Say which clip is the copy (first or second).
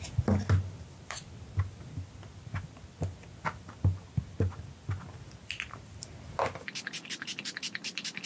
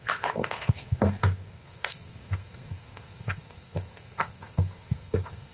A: second